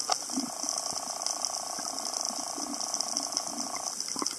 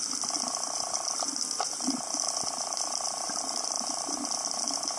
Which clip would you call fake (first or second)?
second